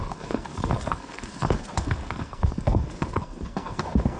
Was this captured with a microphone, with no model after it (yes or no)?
no